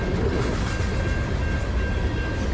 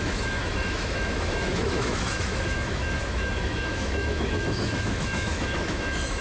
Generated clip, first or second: second